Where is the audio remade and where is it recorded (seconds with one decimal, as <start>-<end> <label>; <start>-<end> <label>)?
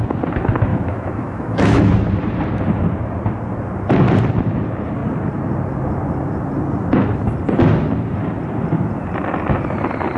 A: 0.0-0.7 recorded; 0.7-1.9 remade; 1.9-10.2 recorded